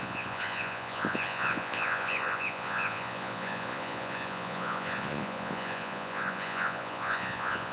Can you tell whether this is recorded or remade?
remade